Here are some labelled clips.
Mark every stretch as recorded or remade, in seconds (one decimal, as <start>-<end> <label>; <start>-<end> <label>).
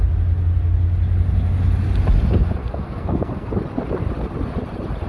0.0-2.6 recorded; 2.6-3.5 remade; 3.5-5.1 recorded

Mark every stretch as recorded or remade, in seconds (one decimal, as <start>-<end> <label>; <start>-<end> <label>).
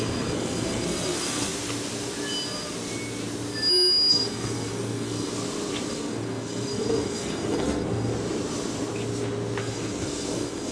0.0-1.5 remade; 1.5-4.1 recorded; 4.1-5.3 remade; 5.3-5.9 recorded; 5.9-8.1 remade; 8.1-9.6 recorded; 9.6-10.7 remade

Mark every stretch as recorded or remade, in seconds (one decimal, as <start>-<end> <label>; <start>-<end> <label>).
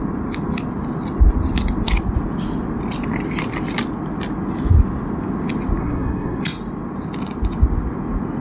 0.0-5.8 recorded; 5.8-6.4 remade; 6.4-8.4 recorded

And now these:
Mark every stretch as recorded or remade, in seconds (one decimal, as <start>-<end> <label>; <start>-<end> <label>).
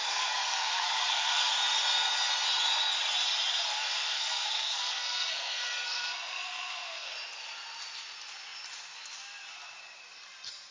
0.0-1.5 remade; 1.5-3.9 recorded; 3.9-7.1 remade; 7.1-10.7 recorded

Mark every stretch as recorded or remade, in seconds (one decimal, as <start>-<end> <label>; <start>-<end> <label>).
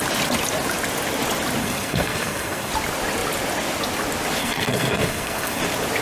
0.0-1.6 recorded; 1.6-2.7 remade; 2.7-4.4 recorded; 4.4-5.6 remade; 5.6-6.0 recorded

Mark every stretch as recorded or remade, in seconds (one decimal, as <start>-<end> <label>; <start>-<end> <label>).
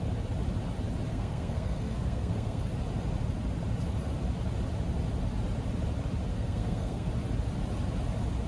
0.0-1.1 recorded; 1.1-2.6 remade; 2.6-6.3 recorded; 6.3-7.1 remade; 7.1-8.5 recorded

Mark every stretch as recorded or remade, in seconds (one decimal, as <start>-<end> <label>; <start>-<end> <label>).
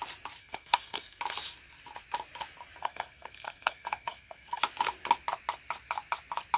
0.0-0.4 recorded; 0.4-1.2 remade; 1.2-2.8 recorded; 2.8-4.6 remade; 4.6-6.6 recorded